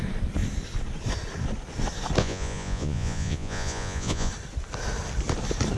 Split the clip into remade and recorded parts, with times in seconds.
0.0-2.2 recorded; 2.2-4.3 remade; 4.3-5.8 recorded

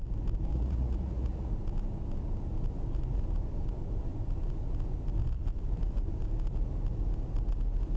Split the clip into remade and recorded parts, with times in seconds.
0.0-0.5 recorded; 0.5-1.5 remade; 1.5-8.0 recorded

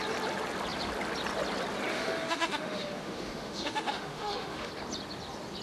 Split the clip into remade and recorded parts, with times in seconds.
0.0-1.9 recorded; 1.9-4.7 remade; 4.7-5.6 recorded

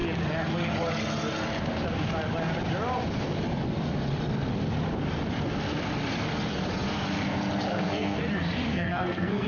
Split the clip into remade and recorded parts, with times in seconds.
0.0-7.7 recorded; 7.7-8.2 remade; 8.2-8.7 recorded; 8.7-9.5 remade

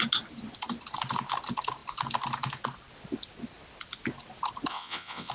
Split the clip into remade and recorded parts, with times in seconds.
0.0-4.7 recorded; 4.7-5.3 remade

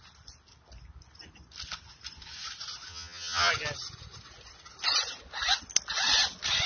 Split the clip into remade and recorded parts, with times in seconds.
0.0-2.9 recorded; 2.9-3.5 remade; 3.5-6.7 recorded

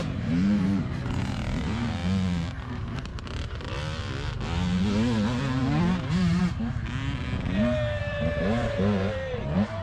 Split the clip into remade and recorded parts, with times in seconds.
0.0-3.1 remade; 3.1-5.8 recorded; 5.8-6.4 remade; 6.4-8.0 recorded; 8.0-9.8 remade